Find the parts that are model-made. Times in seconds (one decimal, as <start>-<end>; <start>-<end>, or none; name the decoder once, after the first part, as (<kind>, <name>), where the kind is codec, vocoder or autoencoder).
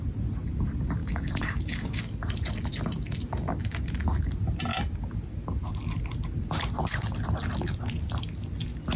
1.0-2.0 (codec, DAC)